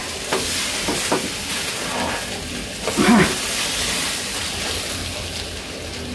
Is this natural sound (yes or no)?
yes